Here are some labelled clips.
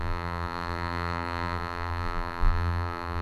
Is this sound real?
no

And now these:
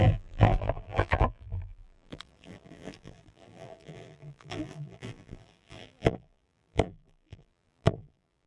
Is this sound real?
no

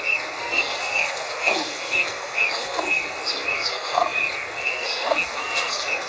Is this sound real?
no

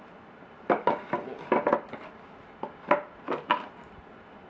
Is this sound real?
yes